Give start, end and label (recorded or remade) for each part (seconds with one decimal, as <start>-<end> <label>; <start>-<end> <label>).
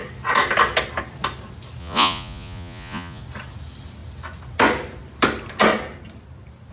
0.0-1.8 recorded; 1.8-3.2 remade; 3.2-6.7 recorded